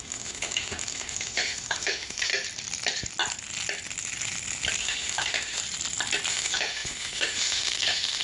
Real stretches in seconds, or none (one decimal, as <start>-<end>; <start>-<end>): 2.3-4.8; 5.6-6.3

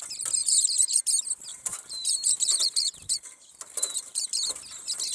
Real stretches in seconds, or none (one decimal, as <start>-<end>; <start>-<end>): 0.0-0.4; 1.0-1.5; 4.4-5.1

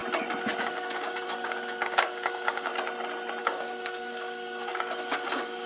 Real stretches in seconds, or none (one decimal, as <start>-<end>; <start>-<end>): 0.0-0.6; 2.7-3.4

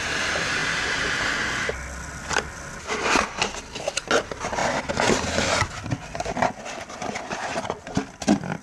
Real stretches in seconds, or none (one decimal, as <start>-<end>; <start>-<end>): 0.0-8.6

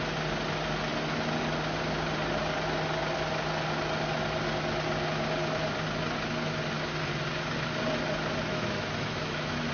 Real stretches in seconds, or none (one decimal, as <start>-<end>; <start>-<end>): 0.0-8.5

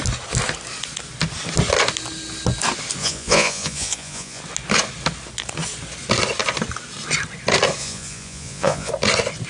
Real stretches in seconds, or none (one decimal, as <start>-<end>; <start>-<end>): 0.0-3.0; 4.4-7.8; 8.9-9.5